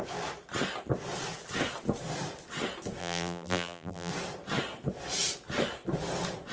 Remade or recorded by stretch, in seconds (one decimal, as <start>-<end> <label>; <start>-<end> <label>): 0.0-3.0 recorded; 3.0-4.1 remade; 4.1-6.5 recorded